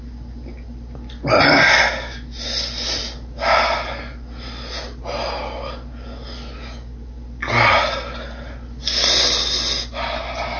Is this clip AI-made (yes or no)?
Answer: no